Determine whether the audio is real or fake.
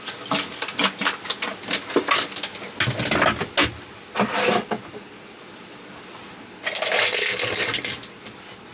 real